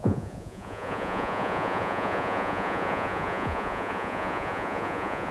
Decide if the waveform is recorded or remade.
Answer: remade